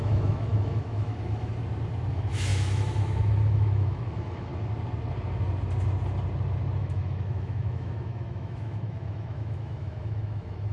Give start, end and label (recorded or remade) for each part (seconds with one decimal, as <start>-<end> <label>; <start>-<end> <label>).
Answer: 0.0-1.5 remade; 1.5-2.1 recorded; 2.1-4.5 remade; 4.5-6.8 recorded; 6.8-10.7 remade